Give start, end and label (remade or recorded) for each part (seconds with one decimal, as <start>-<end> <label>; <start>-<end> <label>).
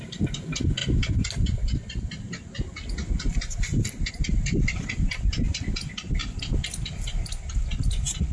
0.0-6.2 recorded; 6.2-7.3 remade; 7.3-8.3 recorded